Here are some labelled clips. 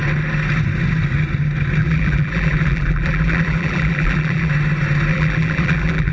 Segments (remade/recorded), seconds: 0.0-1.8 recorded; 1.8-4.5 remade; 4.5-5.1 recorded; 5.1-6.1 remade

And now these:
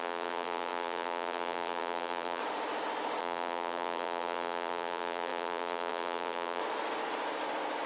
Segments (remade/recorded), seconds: 0.0-2.4 remade; 2.4-3.2 recorded; 3.2-6.6 remade; 6.6-7.9 recorded

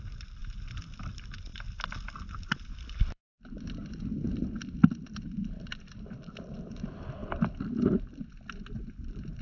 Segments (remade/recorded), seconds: 0.0-0.4 remade; 0.4-1.0 recorded; 1.0-1.5 remade; 1.5-3.0 recorded; 3.0-4.8 remade; 4.8-5.7 recorded; 5.7-9.4 remade

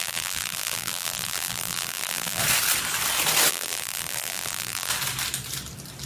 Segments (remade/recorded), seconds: 0.0-2.4 remade; 2.4-3.5 recorded; 3.5-4.9 remade; 4.9-6.1 recorded

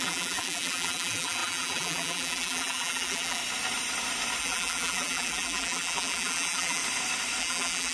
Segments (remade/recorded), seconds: 0.0-3.4 remade; 3.4-4.4 recorded; 4.4-6.8 remade; 6.8-7.4 recorded; 7.4-7.9 remade

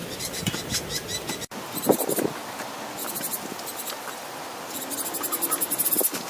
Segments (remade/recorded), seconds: 0.0-2.6 remade; 2.6-3.0 recorded; 3.0-4.8 remade; 4.8-6.3 recorded